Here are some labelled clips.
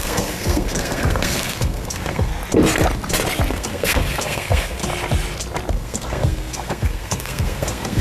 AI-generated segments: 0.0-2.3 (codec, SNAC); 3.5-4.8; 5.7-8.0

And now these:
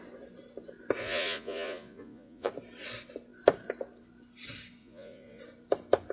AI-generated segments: 1.0-2.5 (vocoder, Vocos); 4.8-5.4

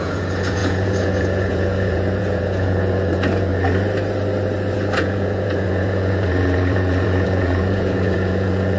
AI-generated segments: 0.0-3.5 (vocoder, Vocos); 4.7-8.8

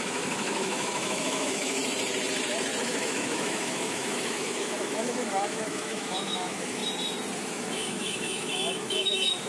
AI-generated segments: 0.0-1.8 (autoencoder, DAC-VAE); 2.8-6.8; 7.4-9.5

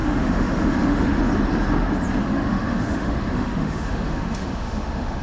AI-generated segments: 0.0-1.2 (autoencoder, DAC-VAE); 2.2-5.2

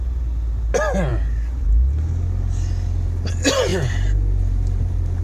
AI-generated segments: none

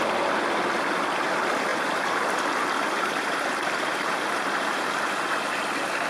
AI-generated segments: 1.7-5.4 (vocoder, BigVGAN v2)

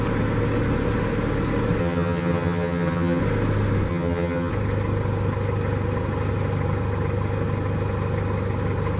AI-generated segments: 1.8-3.2 (vocoder, HiFi-GAN); 3.9-4.5